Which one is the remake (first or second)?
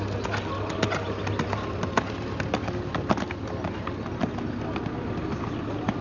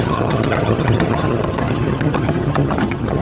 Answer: second